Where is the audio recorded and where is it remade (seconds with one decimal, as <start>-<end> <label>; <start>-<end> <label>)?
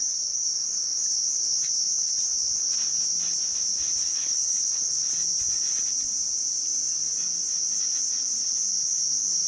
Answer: 0.0-4.1 recorded; 4.1-4.9 remade; 4.9-9.5 recorded